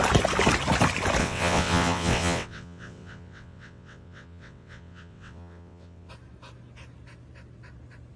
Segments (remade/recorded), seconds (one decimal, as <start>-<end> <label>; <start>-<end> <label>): 0.0-1.2 recorded; 1.2-6.1 remade; 6.1-8.2 recorded